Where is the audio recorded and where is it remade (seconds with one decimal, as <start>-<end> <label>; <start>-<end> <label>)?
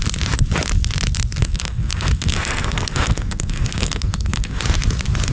0.0-1.4 recorded; 1.4-4.6 remade; 4.6-5.3 recorded